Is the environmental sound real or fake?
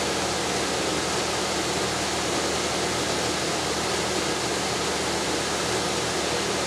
real